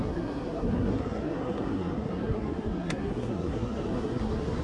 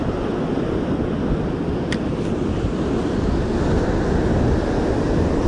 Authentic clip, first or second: second